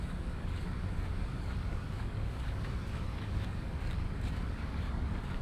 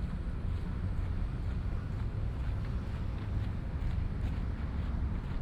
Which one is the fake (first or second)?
first